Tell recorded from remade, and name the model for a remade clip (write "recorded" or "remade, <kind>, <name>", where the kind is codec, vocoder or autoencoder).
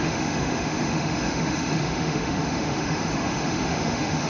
remade, autoencoder, DAC-VAE